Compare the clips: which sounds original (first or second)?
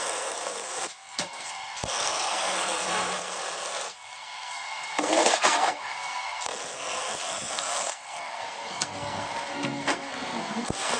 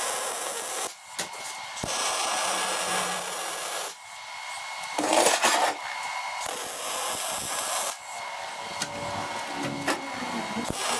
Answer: second